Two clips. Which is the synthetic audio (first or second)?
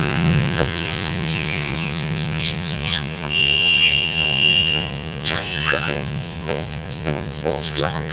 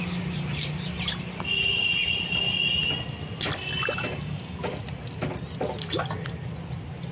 first